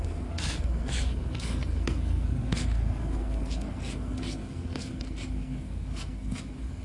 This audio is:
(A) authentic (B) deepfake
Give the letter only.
B